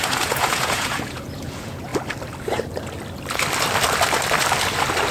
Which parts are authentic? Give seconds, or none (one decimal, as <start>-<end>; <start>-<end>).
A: 1.9-5.1